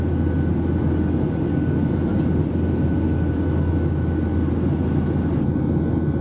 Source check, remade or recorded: recorded